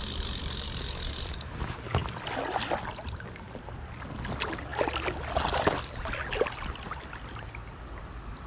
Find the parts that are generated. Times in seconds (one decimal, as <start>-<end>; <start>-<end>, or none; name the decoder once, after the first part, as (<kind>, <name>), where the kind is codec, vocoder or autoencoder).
none